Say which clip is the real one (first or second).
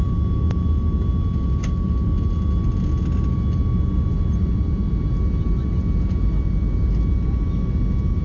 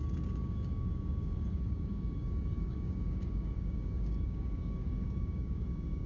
first